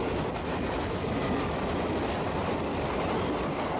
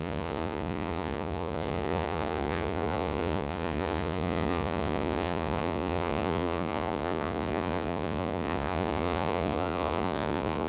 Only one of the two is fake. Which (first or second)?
second